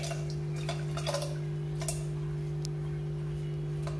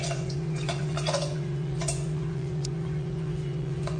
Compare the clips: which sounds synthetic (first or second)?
second